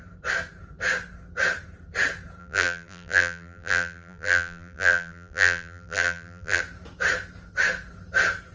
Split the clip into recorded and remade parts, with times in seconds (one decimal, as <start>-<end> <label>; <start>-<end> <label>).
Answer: 0.0-2.4 recorded; 2.4-6.6 remade; 6.6-8.5 recorded